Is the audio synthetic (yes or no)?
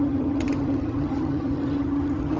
yes